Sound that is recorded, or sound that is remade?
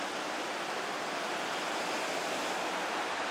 recorded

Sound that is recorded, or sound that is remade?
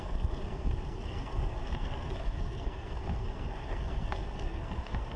remade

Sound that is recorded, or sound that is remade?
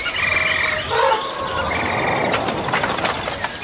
recorded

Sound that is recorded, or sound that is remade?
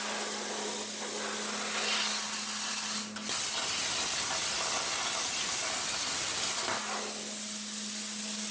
recorded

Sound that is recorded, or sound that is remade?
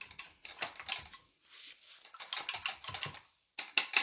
recorded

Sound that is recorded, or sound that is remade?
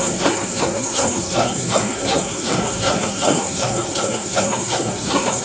remade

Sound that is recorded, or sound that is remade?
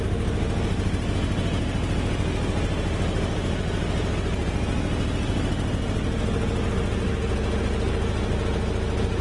recorded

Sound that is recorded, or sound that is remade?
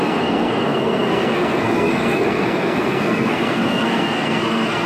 remade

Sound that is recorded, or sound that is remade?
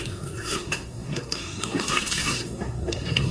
remade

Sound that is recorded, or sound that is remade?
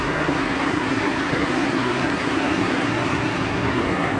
remade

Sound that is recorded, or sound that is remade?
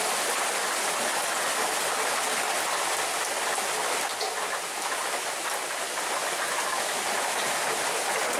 recorded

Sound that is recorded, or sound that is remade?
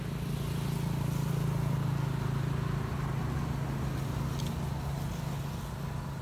recorded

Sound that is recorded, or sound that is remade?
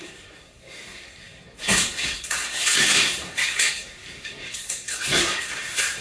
remade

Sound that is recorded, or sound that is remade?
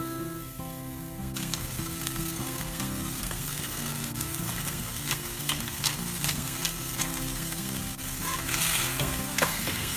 remade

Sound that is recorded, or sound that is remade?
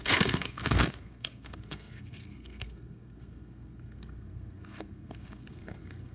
remade